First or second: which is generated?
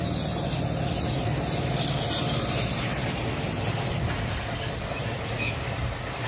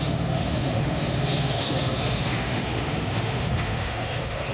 second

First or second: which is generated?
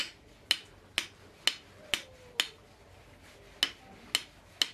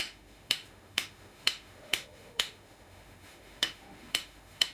second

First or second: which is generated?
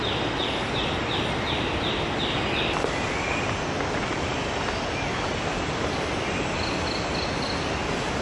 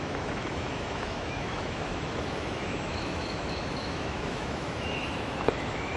second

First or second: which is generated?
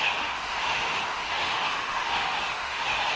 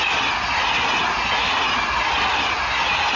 first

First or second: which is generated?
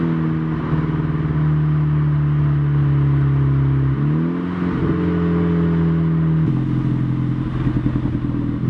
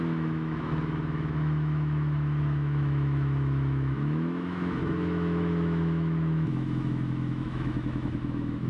second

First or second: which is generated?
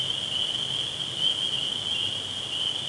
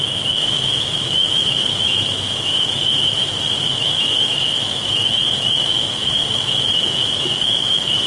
second